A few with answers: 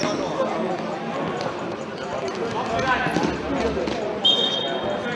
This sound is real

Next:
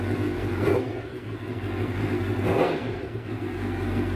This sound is fake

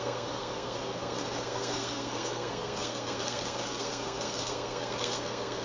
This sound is fake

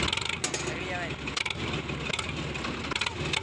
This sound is real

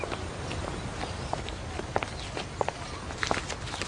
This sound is real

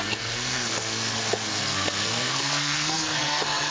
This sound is fake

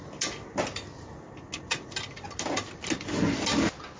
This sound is real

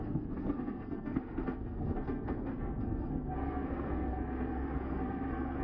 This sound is fake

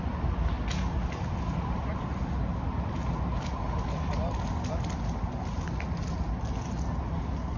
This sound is real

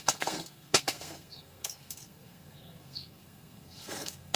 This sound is fake